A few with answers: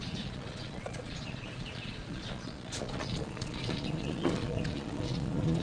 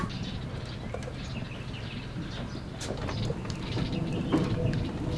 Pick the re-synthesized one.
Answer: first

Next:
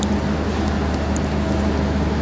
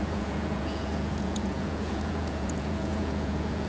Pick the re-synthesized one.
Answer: second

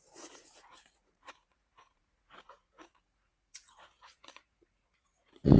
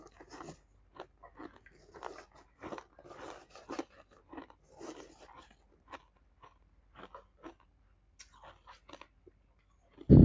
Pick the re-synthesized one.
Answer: first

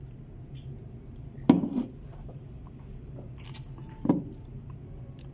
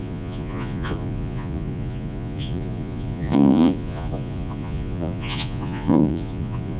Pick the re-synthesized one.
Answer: second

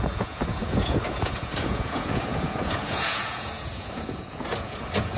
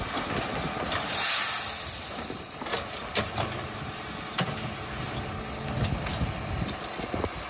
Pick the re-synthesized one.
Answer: first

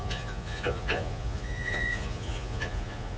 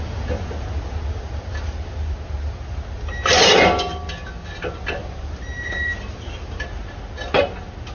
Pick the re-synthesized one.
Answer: first